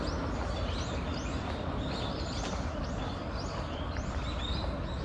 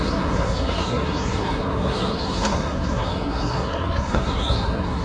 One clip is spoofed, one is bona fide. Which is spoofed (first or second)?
second